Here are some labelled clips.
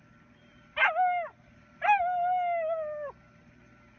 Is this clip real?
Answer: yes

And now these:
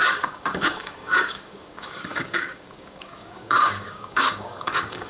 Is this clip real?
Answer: no